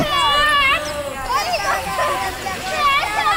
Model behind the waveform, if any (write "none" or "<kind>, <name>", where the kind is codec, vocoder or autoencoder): none